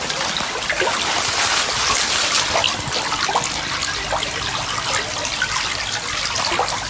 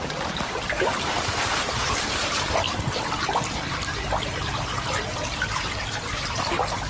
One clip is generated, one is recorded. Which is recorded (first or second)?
first